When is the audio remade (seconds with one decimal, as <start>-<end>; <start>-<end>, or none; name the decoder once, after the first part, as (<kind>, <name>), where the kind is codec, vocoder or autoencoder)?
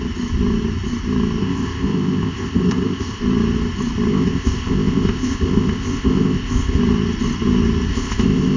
1.4-3.2 (codec, ZipCodec); 4.1-6.8; 7.9-8.6